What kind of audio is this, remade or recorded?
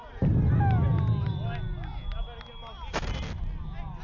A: recorded